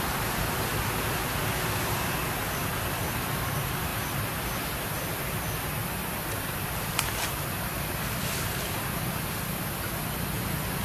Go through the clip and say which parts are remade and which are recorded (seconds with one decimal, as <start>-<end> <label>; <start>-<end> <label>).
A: 0.0-10.8 recorded